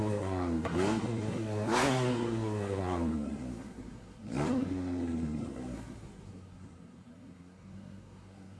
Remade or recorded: remade